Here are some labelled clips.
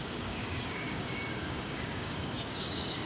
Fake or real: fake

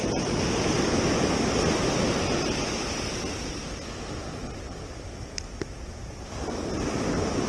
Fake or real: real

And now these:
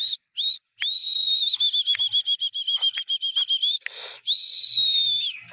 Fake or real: real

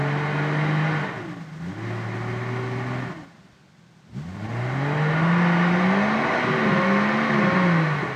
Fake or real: real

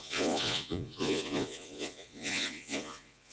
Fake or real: fake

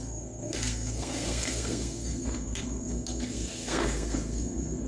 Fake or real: fake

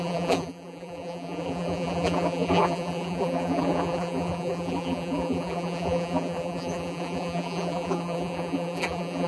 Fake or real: fake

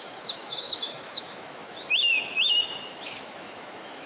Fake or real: fake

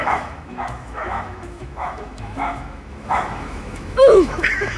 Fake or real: fake